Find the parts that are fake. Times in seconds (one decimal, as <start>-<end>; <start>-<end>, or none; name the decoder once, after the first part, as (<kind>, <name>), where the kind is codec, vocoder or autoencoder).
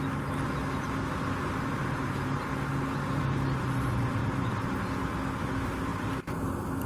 1.4-2.4 (vocoder, BigVGAN v2); 4.2-5.1